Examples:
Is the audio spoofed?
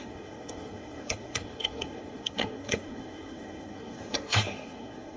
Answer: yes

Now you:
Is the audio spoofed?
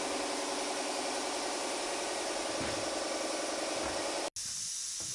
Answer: no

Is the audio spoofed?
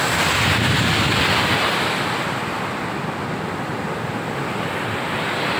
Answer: no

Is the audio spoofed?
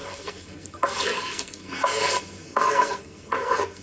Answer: yes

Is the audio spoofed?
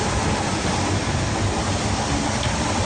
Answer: no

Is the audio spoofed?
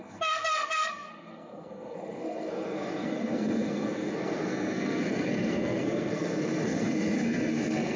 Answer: yes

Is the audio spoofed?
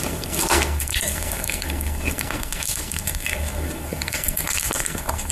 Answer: yes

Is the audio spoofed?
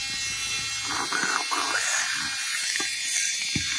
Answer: no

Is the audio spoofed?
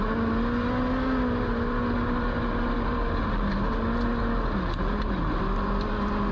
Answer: no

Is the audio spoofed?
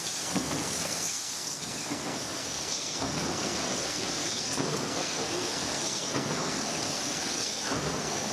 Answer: yes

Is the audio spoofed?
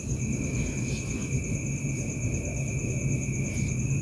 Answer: no